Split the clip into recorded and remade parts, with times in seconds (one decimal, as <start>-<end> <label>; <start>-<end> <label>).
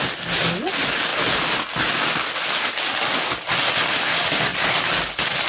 0.0-5.5 recorded